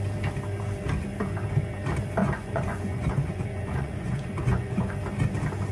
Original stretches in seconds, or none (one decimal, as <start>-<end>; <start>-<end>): 0.0-2.2; 4.9-5.7